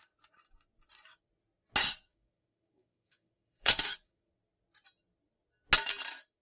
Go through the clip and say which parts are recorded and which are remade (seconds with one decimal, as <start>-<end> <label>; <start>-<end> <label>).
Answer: 0.0-1.8 recorded; 1.8-4.3 remade; 4.3-6.4 recorded